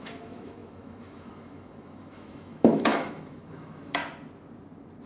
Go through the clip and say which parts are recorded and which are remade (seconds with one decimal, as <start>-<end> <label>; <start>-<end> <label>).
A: 0.0-4.0 remade; 4.0-5.1 recorded